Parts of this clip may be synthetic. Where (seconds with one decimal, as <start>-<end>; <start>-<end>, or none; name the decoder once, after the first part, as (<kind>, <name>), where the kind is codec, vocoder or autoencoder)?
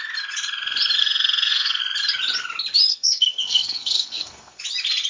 1.0-1.8 (codec, SNAC); 2.9-4.6